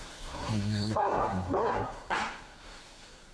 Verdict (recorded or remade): remade